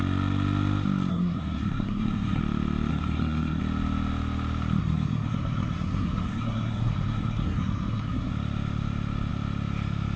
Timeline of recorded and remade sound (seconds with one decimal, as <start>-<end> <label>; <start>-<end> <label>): 0.0-1.1 recorded; 1.1-2.4 remade; 2.4-2.9 recorded; 2.9-3.6 remade; 3.6-4.8 recorded; 4.8-8.3 remade; 8.3-10.2 recorded